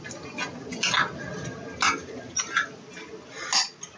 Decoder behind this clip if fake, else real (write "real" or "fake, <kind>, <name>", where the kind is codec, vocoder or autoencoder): real